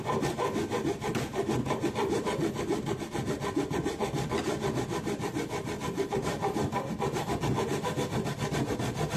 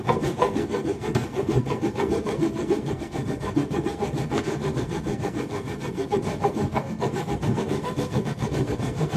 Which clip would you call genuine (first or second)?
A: first